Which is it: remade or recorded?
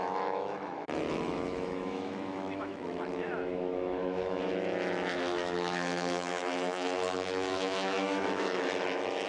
remade